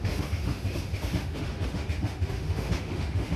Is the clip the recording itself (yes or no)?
no